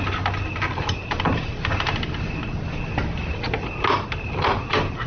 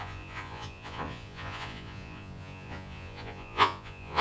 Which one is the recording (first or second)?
first